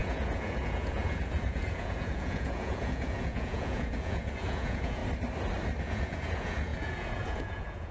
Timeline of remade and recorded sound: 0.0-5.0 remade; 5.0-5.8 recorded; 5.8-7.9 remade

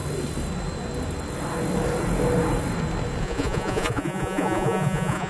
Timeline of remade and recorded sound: 0.0-3.2 recorded; 3.2-5.3 remade

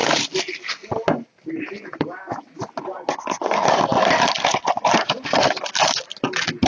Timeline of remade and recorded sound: 0.0-6.7 recorded

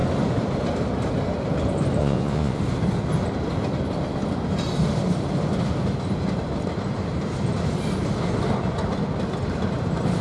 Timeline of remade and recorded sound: 0.0-2.0 recorded; 2.0-2.6 remade; 2.6-10.2 recorded

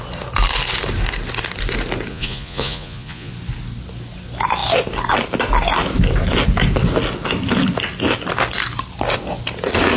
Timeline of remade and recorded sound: 0.0-2.1 recorded; 2.1-3.3 remade; 3.3-10.0 recorded

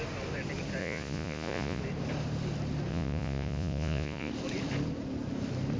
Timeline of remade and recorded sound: 0.0-0.8 recorded; 0.8-1.8 remade; 1.8-2.9 recorded; 2.9-4.3 remade; 4.3-5.8 recorded

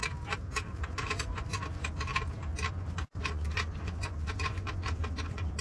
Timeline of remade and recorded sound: 0.0-0.8 recorded; 0.8-2.1 remade; 2.1-2.7 recorded; 2.7-5.6 remade

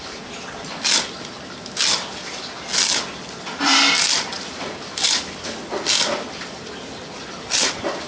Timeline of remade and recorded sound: 0.0-8.1 recorded